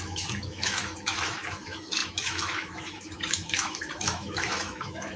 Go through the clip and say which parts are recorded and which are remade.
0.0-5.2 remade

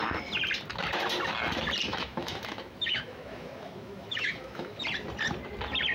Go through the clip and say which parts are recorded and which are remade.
0.0-1.9 recorded; 1.9-4.8 remade; 4.8-5.9 recorded

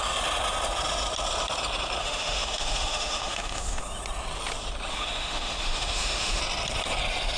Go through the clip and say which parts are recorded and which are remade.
0.0-2.0 recorded; 2.0-3.8 remade; 3.8-4.9 recorded; 4.9-6.4 remade; 6.4-7.4 recorded

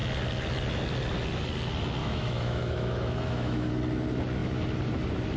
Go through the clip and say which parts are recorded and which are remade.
0.0-2.0 recorded; 2.0-3.7 remade; 3.7-5.4 recorded

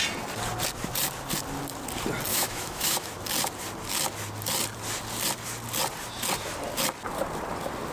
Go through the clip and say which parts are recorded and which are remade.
0.0-2.3 recorded; 2.3-3.1 remade; 3.1-7.9 recorded

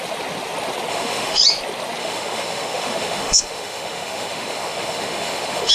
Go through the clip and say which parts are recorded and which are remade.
0.0-0.9 recorded; 0.9-1.4 remade; 1.4-2.0 recorded; 2.0-5.7 remade